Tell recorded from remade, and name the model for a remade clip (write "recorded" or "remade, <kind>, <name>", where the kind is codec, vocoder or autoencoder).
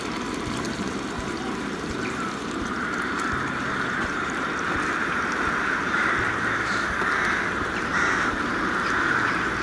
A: remade, vocoder, BigVGAN v2